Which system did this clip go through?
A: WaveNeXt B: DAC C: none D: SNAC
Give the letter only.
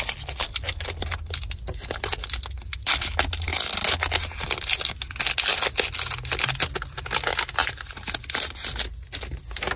C